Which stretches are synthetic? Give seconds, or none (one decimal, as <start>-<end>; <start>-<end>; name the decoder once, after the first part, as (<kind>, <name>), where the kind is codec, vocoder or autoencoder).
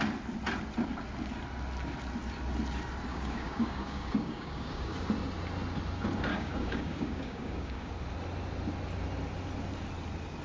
3.1-4.9 (codec, DAC); 6.3-7.9